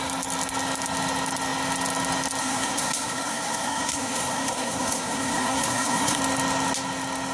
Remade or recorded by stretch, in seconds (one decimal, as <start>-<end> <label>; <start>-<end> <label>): 0.0-2.4 recorded; 2.4-6.2 remade; 6.2-7.3 recorded